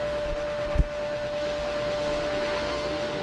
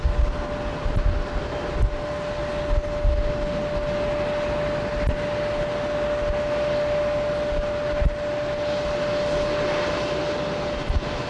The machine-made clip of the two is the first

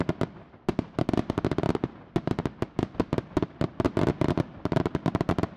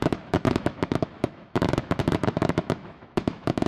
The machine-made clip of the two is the second